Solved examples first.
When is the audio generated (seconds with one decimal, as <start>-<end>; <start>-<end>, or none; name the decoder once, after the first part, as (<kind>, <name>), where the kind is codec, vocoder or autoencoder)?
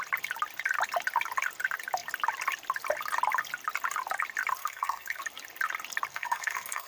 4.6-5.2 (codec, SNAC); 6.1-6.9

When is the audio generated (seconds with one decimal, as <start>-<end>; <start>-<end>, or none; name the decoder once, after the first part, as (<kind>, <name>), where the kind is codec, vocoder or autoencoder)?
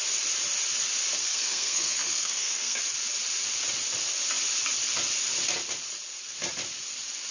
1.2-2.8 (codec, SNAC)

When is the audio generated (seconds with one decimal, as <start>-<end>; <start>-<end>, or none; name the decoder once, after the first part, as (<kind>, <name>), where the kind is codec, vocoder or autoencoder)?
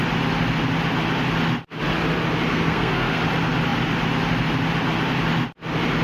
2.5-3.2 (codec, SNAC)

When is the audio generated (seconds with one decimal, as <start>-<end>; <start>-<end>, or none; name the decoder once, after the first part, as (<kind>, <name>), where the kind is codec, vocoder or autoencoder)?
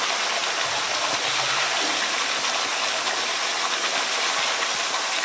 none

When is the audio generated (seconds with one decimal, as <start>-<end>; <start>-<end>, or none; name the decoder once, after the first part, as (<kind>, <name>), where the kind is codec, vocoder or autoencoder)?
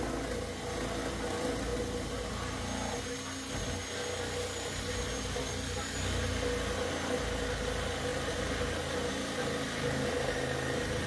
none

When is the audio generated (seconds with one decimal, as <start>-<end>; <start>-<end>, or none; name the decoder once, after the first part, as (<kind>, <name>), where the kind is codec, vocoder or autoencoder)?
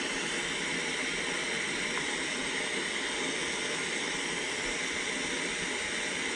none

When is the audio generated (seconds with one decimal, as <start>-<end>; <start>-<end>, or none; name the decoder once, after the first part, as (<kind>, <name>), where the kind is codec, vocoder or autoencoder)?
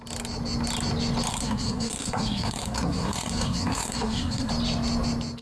1.3-4.5 (codec, SNAC)